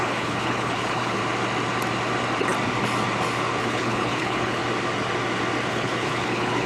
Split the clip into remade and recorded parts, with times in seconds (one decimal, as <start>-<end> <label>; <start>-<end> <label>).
0.0-1.2 remade; 1.2-3.6 recorded; 3.6-4.6 remade; 4.6-5.7 recorded; 5.7-6.7 remade